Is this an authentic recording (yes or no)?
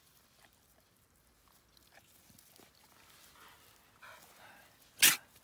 yes